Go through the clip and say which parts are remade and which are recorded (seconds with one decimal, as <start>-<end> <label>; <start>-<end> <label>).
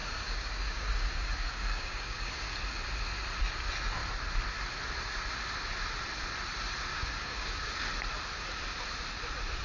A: 0.0-2.5 remade; 2.5-6.9 recorded; 6.9-7.7 remade; 7.7-9.6 recorded